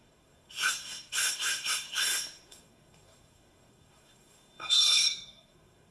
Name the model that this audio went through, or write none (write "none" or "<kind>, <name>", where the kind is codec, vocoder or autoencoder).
codec, SNAC